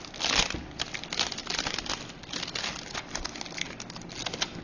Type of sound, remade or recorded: recorded